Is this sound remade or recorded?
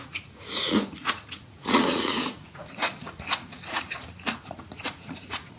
remade